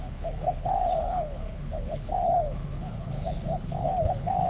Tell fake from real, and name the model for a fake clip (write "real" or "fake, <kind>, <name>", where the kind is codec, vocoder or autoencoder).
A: fake, codec, HILCodec